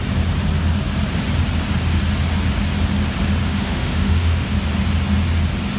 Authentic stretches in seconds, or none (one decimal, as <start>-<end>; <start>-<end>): 0.0-3.4; 4.6-5.8